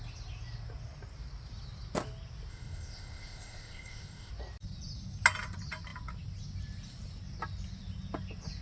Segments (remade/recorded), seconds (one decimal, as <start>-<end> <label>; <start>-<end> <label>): 0.0-2.5 recorded; 2.5-4.3 remade; 4.3-8.6 recorded